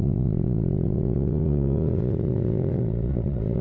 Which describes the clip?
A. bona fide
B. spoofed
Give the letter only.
B